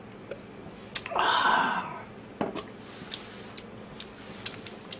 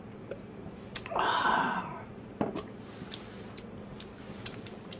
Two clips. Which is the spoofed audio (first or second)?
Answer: second